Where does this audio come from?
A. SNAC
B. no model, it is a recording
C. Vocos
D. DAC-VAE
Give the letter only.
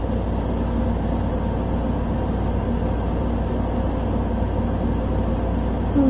B